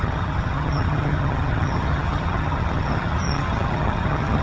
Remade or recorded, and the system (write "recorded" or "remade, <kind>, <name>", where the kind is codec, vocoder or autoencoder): remade, vocoder, HiFi-GAN